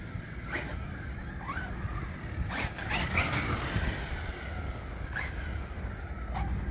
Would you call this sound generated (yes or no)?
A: no